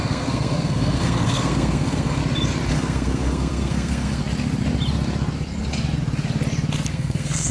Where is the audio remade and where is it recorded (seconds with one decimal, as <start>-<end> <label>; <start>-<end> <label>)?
0.0-2.2 remade; 2.2-2.7 recorded; 2.7-4.2 remade; 4.2-6.9 recorded; 6.9-7.5 remade